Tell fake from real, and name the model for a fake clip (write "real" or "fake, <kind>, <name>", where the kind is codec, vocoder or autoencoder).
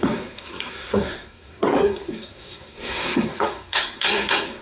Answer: fake, codec, SNAC